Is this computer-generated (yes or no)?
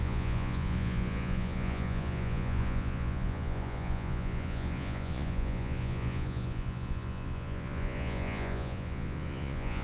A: yes